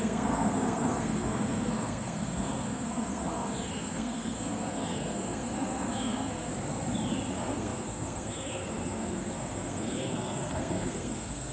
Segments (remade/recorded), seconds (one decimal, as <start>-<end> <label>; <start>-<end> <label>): 0.0-6.5 remade; 6.5-7.3 recorded; 7.3-11.5 remade